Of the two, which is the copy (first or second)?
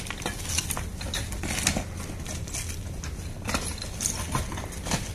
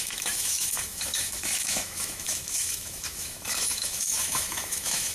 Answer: second